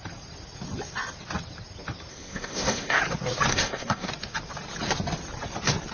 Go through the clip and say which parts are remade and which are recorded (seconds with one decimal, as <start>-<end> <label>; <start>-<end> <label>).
0.0-2.1 recorded; 2.1-3.0 remade; 3.0-3.5 recorded; 3.5-4.1 remade; 4.1-5.9 recorded